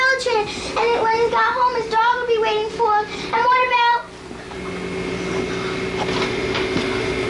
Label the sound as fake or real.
real